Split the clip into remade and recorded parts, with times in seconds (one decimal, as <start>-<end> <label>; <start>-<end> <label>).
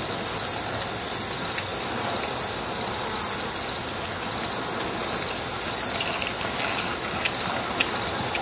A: 0.0-8.4 recorded